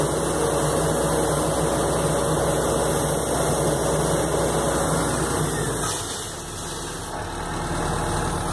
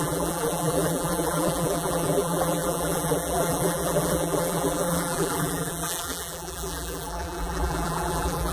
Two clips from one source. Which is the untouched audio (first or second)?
first